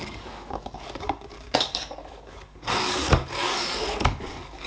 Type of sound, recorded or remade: remade